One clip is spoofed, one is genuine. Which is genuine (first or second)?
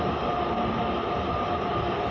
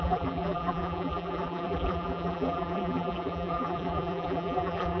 first